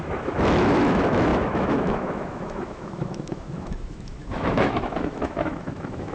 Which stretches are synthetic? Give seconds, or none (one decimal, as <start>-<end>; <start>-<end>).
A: 0.0-6.1